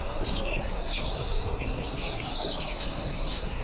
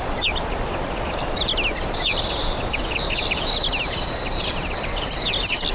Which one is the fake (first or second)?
first